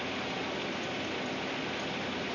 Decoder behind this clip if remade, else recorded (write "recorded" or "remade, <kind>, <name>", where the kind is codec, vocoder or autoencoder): recorded